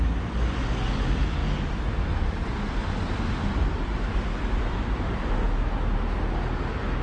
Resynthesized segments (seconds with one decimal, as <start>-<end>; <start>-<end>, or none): 2.8-5.3